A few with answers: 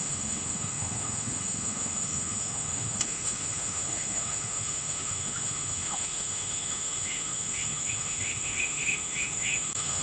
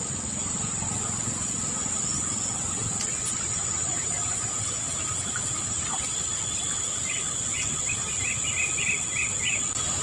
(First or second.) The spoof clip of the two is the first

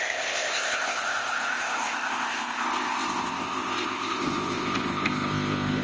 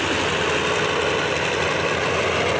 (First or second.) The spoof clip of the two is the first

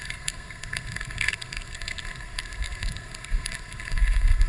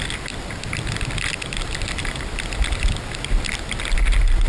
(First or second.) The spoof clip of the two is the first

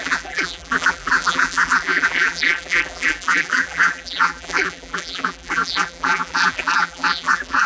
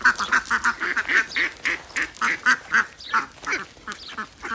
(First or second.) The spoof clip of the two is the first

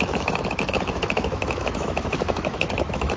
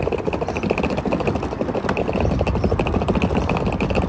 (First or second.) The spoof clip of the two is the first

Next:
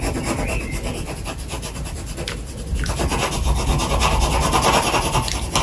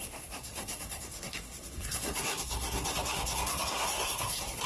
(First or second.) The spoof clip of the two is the second